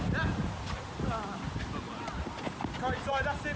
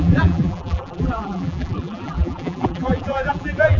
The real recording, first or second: first